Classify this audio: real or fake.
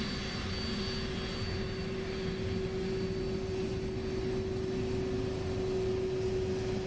real